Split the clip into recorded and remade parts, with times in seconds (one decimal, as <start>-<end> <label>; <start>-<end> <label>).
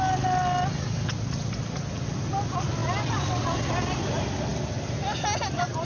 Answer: 0.0-5.8 recorded